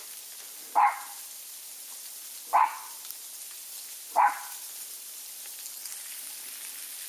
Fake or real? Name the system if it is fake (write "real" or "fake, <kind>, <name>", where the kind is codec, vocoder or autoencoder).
real